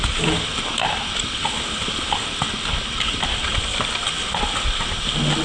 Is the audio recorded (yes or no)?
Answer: yes